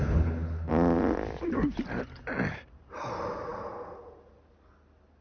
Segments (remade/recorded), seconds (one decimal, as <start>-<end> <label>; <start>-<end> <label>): 0.0-0.7 remade; 0.7-5.2 recorded